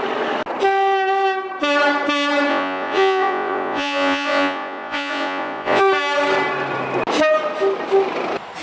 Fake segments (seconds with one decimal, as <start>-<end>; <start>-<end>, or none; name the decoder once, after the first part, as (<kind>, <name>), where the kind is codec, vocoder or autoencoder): 2.5-5.8 (vocoder, Vocos)